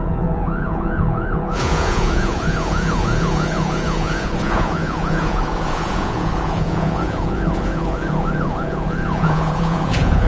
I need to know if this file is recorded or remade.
remade